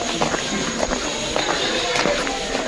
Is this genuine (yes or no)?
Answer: yes